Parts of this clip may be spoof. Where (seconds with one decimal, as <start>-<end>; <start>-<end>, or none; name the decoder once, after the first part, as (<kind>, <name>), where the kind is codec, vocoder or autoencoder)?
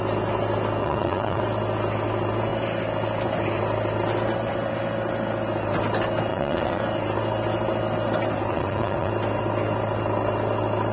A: 0.8-1.4 (vocoder, Vocos); 6.3-6.8; 8.5-9.1